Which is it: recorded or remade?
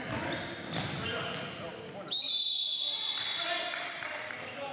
recorded